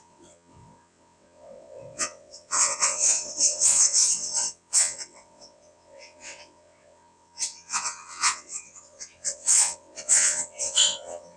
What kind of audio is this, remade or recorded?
remade